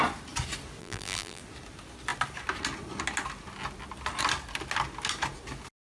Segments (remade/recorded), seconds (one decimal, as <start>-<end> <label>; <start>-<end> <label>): 0.0-0.8 recorded; 0.8-1.4 remade; 1.4-5.9 recorded